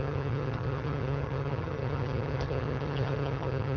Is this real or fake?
fake